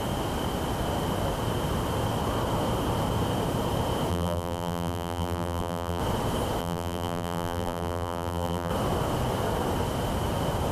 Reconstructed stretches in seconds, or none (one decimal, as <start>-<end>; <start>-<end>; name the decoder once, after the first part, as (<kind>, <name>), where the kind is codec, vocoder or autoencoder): 4.1-6.0 (vocoder, BigVGAN v2); 6.6-8.7